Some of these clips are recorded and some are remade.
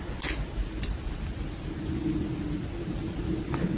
recorded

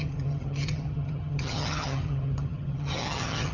remade